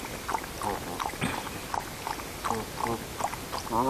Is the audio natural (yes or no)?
yes